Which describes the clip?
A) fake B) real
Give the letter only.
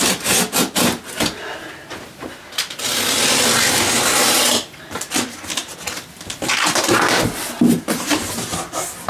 B